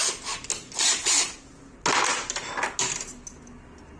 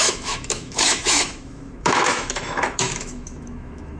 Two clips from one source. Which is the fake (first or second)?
second